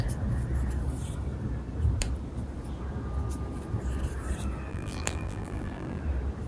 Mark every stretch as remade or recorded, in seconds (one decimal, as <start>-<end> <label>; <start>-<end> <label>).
0.0-4.7 recorded; 4.7-6.0 remade; 6.0-6.5 recorded